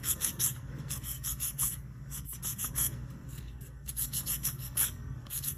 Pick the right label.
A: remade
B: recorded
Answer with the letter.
A